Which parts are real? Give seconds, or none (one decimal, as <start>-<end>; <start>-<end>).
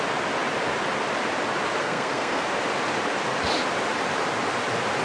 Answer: 0.0-1.8; 2.4-5.0